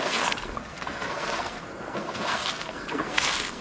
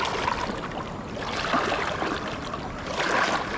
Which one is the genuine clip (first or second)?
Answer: second